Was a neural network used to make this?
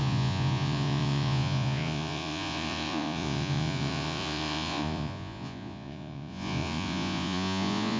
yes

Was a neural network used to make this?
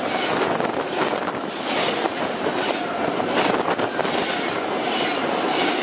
no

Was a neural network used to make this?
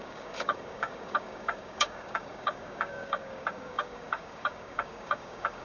yes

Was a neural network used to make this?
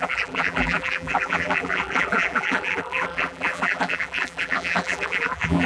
yes